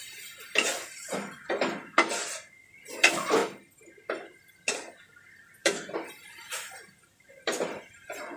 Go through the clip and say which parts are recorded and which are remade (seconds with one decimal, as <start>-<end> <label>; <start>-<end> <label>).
0.0-5.6 recorded; 5.6-7.8 remade; 7.8-8.4 recorded